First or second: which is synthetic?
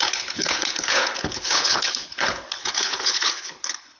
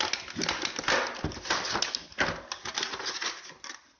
first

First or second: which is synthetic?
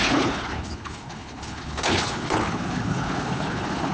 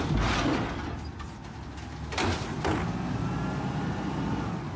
first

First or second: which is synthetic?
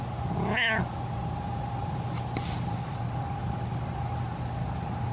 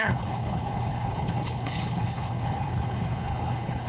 second